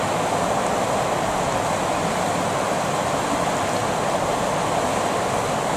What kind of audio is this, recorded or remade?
recorded